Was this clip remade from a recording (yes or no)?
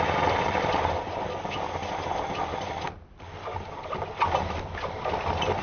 no